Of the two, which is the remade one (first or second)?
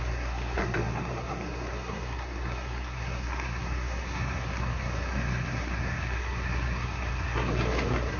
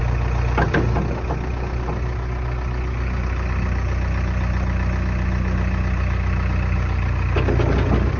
first